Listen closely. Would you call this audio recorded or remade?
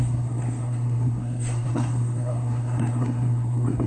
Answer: remade